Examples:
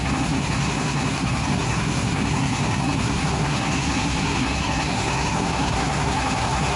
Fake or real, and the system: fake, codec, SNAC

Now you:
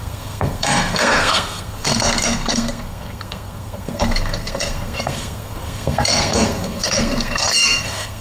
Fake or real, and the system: fake, codec, SNAC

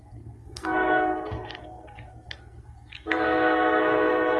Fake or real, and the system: fake, codec, SNAC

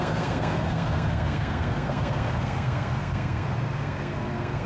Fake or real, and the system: fake, codec, SNAC